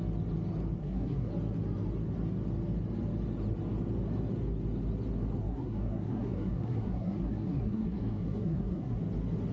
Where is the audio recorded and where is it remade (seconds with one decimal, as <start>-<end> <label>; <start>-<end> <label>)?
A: 0.0-0.8 recorded; 0.8-1.3 remade; 1.3-5.4 recorded; 5.4-9.0 remade; 9.0-9.5 recorded